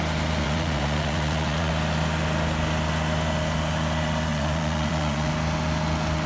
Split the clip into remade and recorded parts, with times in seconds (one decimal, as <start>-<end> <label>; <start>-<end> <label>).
0.0-0.4 recorded; 0.4-1.7 remade; 1.7-4.3 recorded; 4.3-5.3 remade; 5.3-6.3 recorded